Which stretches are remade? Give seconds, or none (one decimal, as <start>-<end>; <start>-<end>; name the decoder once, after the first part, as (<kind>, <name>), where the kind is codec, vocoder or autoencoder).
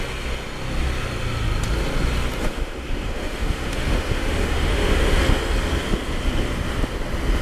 2.4-5.2 (autoencoder, DAC-VAE)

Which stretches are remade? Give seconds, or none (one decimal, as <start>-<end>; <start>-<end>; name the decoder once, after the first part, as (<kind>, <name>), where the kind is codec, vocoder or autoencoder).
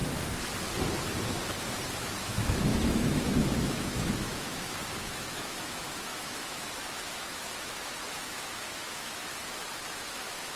2.0-9.2 (autoencoder, DAC-VAE); 9.9-10.6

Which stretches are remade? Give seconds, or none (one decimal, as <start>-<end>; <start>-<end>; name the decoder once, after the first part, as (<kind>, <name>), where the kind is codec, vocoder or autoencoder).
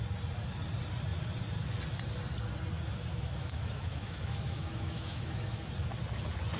3.1-5.7 (autoencoder, DAC-VAE)